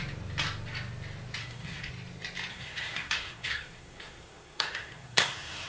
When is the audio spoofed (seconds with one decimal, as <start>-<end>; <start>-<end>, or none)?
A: 1.4-1.9; 2.5-5.7

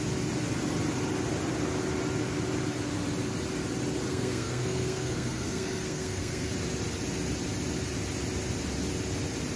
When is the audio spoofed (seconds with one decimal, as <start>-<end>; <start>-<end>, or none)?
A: 4.1-6.5

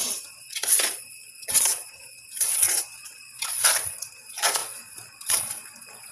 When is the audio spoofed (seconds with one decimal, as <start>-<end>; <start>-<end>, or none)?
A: 0.0-6.1

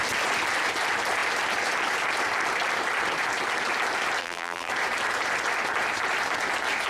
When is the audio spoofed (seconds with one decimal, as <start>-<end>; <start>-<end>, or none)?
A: 4.2-4.7

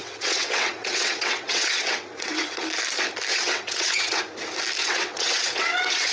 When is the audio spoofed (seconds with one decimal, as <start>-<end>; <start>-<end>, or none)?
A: 0.0-2.6; 3.3-4.2; 4.8-6.1

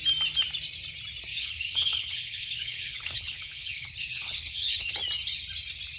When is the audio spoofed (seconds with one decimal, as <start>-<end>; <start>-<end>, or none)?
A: 1.3-4.9

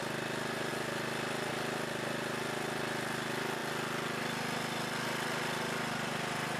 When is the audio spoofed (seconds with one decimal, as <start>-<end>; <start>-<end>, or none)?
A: none